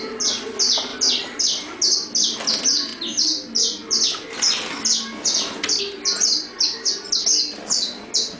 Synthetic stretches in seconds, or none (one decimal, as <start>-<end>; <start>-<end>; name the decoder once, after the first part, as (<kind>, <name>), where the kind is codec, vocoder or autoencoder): none